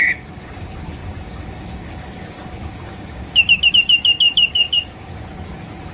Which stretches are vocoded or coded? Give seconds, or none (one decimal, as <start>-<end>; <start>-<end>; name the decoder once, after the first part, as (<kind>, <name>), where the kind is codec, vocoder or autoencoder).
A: 0.0-5.1 (codec, DAC)